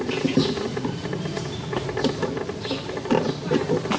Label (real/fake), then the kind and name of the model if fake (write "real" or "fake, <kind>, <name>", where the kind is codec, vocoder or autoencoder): real